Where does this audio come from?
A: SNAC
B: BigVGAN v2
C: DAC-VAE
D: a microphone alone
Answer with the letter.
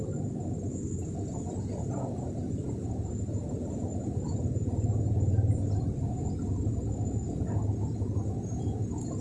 D